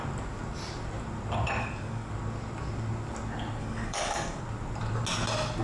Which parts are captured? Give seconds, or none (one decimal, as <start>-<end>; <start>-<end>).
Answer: 0.0-1.6; 2.1-3.6; 4.4-5.6